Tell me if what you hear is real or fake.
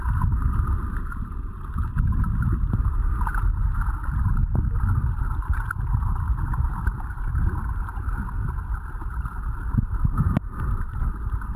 real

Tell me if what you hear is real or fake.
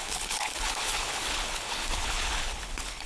fake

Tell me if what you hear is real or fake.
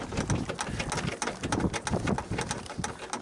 real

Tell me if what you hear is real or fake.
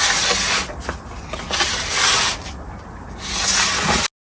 real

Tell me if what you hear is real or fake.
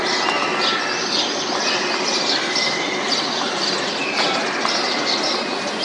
real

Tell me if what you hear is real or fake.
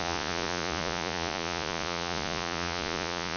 fake